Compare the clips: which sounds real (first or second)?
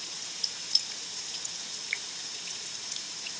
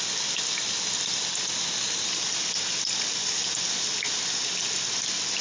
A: second